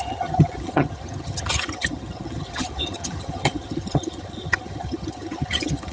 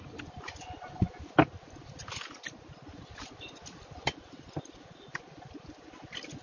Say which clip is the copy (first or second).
first